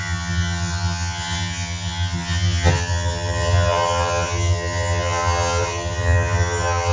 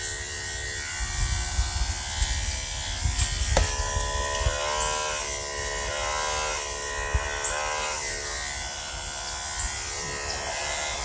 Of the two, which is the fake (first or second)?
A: first